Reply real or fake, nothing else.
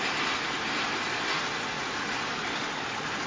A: real